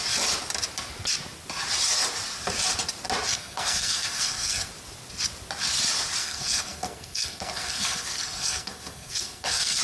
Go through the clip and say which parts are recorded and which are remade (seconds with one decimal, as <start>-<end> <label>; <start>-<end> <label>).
0.0-3.3 recorded; 3.3-4.7 remade; 4.7-6.2 recorded; 6.2-9.8 remade